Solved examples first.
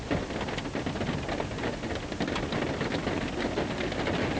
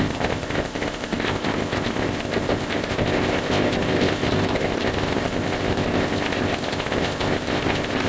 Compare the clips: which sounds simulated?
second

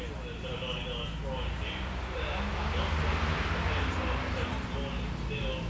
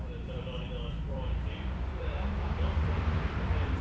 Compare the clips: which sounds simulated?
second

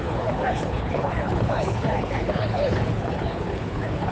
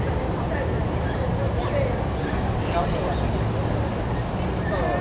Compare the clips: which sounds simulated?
first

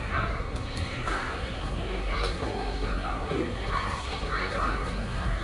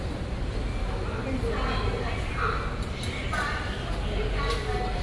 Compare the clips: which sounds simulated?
first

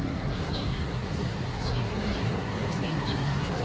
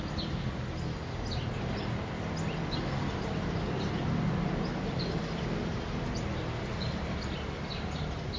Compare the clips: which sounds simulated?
first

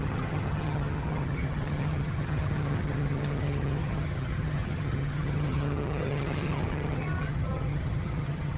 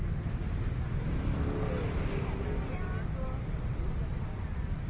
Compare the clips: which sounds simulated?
first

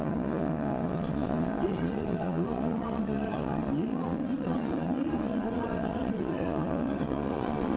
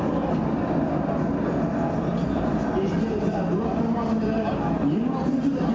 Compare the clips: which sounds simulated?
first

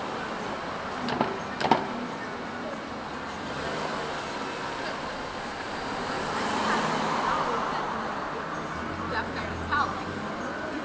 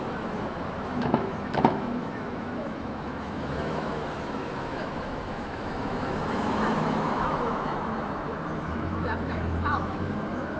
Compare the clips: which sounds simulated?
second